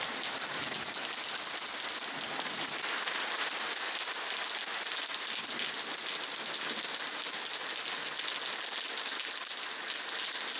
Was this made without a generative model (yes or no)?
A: yes